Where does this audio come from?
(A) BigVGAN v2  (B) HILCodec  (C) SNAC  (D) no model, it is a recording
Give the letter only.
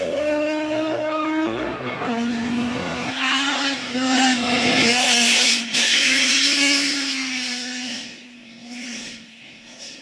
C